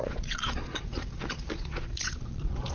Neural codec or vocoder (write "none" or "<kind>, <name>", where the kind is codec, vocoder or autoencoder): vocoder, Vocos